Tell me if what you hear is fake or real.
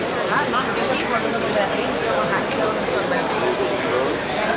real